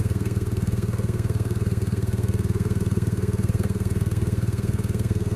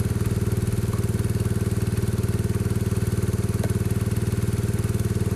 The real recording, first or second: second